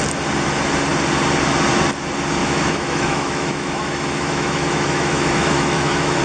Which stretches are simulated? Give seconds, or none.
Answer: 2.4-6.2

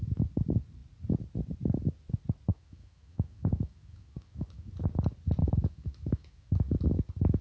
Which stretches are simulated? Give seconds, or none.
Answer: 2.5-4.7; 5.4-6.6

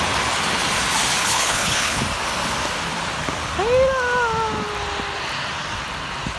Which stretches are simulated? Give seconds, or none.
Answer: 1.2-2.0

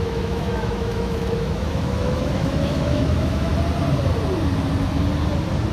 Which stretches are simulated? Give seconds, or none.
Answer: 0.0-3.5

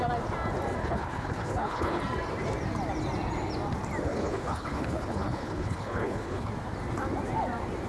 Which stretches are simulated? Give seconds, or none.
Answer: 0.8-2.0; 4.1-6.5

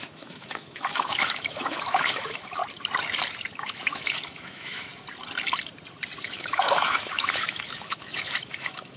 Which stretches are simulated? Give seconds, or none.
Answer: 0.0-2.6; 3.5-4.9; 6.2-9.0

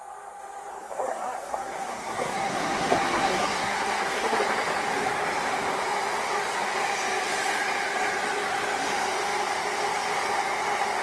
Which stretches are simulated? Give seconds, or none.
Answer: 0.7-4.4